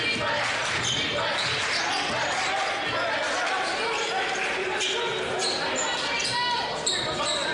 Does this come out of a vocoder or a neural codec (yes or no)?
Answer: no